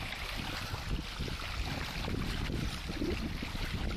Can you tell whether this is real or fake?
real